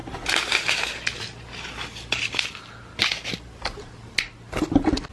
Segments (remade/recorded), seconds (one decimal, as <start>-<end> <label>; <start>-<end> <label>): 0.0-5.1 recorded